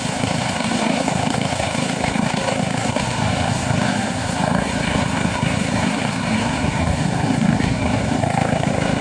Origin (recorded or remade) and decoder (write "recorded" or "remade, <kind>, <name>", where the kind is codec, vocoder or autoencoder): remade, codec, SNAC